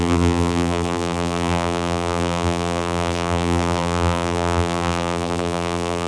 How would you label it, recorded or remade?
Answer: remade